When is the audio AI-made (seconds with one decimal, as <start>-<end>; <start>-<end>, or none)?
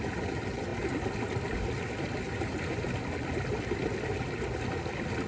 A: none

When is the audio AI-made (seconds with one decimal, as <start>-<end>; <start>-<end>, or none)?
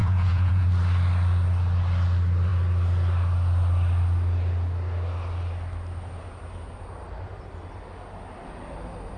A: 0.0-0.7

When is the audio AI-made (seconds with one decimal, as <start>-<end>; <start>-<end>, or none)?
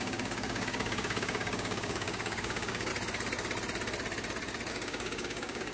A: 0.0-2.9; 4.7-5.7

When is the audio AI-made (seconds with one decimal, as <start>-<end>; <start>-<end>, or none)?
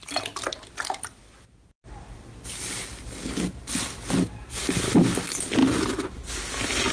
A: none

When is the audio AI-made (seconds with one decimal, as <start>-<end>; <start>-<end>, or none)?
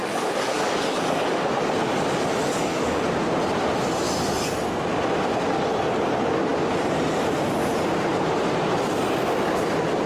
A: 0.0-1.5; 2.4-3.0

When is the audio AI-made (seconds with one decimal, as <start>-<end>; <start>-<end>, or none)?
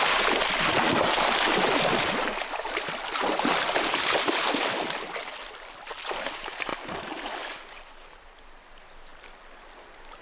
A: none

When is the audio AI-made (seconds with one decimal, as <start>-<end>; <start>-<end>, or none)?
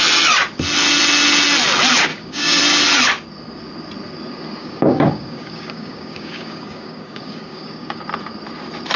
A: 2.1-2.6; 4.6-8.0